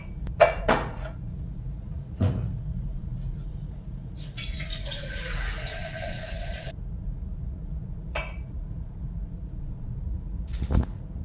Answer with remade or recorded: remade